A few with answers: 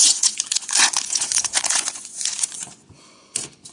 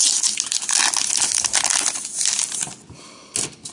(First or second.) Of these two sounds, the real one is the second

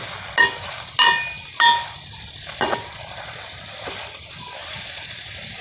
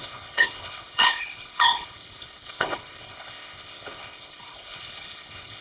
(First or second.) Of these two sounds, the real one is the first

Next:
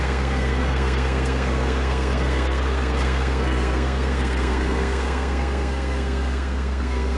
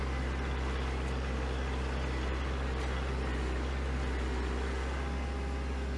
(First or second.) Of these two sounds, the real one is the second